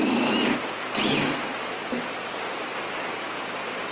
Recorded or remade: recorded